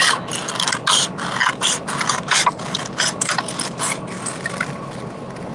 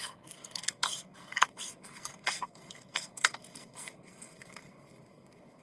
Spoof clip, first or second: second